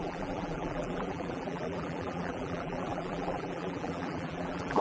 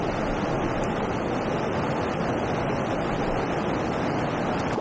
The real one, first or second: second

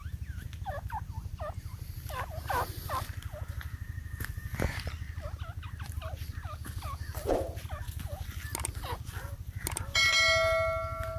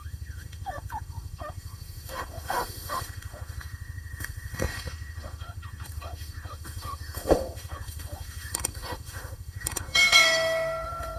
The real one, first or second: first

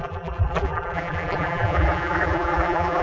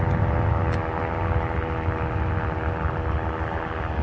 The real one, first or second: second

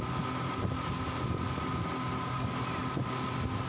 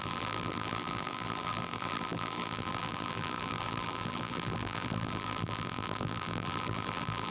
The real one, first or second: first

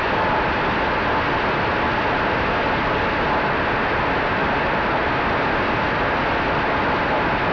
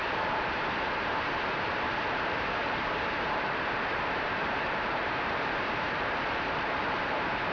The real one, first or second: first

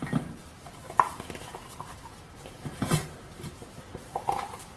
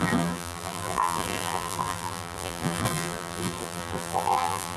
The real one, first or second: first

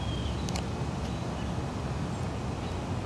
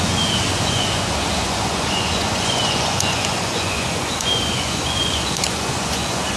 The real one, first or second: first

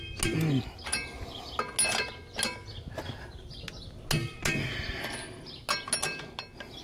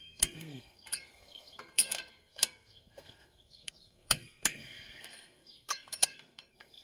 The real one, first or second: first